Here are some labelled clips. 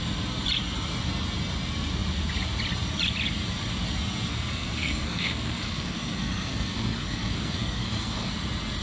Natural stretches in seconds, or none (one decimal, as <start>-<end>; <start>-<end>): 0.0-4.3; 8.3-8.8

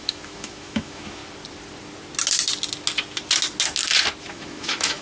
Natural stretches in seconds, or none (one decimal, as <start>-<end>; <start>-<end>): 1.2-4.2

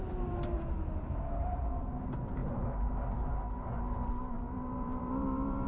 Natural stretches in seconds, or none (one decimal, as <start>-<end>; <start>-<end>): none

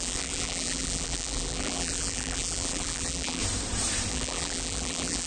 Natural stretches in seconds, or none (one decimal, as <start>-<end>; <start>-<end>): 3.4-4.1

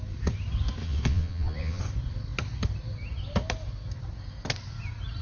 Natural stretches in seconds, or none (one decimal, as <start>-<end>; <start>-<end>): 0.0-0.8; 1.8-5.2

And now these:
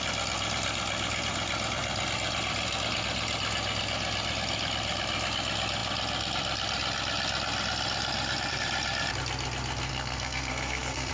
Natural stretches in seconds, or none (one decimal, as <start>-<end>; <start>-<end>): 0.0-9.9

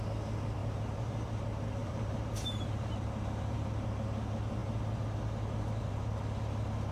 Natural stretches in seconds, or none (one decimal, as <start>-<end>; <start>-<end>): 0.0-0.6; 1.3-1.8; 3.7-6.9